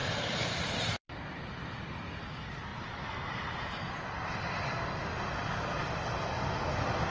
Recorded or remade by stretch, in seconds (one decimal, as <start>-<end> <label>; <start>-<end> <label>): 0.0-1.5 remade; 1.5-2.7 recorded; 2.7-3.4 remade; 3.4-7.1 recorded